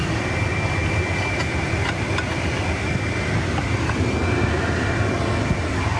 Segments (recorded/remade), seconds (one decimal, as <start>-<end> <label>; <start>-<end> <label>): 0.0-6.0 recorded